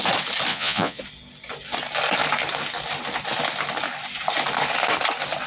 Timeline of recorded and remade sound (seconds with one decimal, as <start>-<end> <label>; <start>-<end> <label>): 0.0-0.5 recorded; 0.5-1.0 remade; 1.0-5.5 recorded